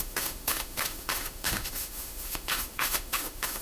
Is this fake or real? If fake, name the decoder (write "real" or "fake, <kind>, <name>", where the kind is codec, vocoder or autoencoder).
fake, autoencoder, DAC-VAE